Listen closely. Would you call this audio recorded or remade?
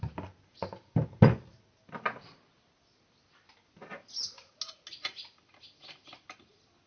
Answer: recorded